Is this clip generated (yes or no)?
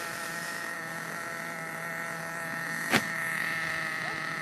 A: no